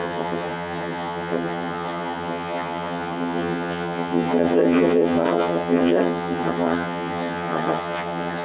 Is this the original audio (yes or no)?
no